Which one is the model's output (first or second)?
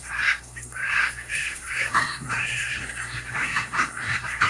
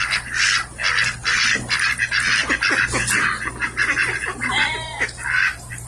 first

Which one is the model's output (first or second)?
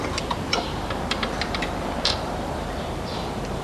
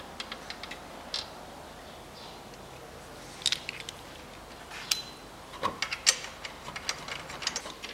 first